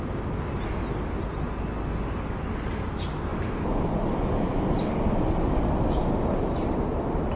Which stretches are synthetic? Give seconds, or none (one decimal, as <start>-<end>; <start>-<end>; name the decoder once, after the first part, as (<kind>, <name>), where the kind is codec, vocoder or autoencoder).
none